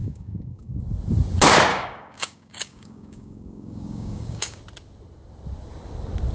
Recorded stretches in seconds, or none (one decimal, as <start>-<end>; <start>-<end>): 0.8-1.7; 4.6-6.3